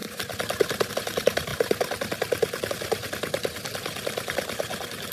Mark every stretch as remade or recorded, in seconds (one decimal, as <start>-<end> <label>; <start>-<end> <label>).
0.0-5.1 recorded